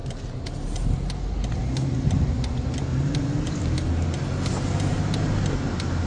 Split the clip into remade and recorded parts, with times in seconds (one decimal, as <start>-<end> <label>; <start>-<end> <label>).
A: 0.0-0.5 remade; 0.5-1.6 recorded; 1.6-2.3 remade; 2.3-2.9 recorded; 2.9-3.6 remade; 3.6-6.1 recorded